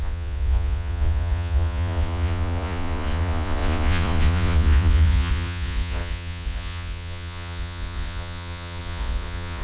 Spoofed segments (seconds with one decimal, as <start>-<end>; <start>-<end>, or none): 0.0-9.6